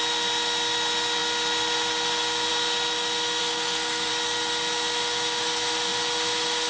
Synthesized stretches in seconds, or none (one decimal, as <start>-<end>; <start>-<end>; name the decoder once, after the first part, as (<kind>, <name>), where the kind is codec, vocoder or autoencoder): 3.4-4.1 (codec, SNAC)

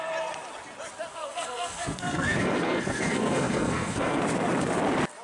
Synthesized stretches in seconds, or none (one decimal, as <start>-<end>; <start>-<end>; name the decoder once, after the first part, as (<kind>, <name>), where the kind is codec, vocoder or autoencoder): 1.1-4.2 (codec, SNAC)

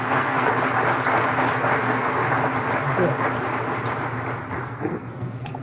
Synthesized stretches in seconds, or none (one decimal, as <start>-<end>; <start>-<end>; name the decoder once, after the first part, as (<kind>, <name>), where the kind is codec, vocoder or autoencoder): 0.0-0.5 (codec, SNAC); 1.8-2.2; 4.6-5.6

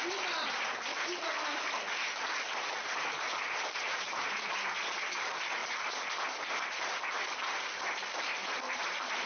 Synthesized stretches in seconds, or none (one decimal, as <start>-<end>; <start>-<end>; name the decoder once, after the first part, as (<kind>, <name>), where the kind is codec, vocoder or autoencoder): none